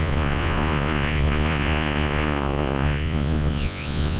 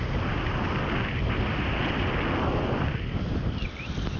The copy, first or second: first